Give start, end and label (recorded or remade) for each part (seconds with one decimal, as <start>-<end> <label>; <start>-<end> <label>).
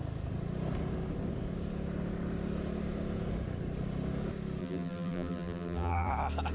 0.0-4.6 recorded; 4.6-6.1 remade; 6.1-6.5 recorded